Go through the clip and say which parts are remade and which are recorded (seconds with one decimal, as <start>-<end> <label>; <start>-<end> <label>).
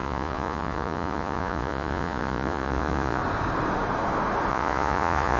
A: 0.0-3.2 remade; 3.2-4.5 recorded; 4.5-5.4 remade